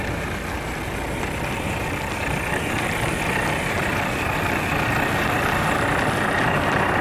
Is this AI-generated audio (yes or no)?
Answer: no